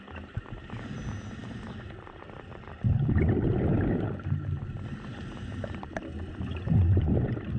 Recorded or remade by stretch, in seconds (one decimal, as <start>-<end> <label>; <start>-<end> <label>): 0.0-7.6 recorded

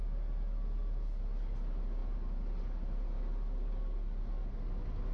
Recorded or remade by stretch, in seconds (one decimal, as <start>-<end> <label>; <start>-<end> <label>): 0.0-5.1 recorded

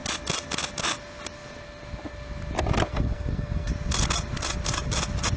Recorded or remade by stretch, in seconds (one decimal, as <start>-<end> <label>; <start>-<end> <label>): 0.0-2.9 recorded; 2.9-3.7 remade; 3.7-5.4 recorded

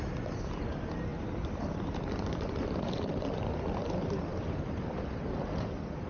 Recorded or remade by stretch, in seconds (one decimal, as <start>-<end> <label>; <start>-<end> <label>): 0.0-6.1 recorded

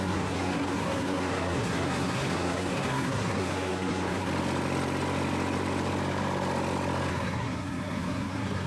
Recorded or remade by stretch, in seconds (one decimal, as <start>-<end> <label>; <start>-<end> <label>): 0.0-4.3 remade; 4.3-7.1 recorded; 7.1-8.7 remade